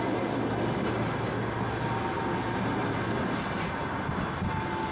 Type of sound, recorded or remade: recorded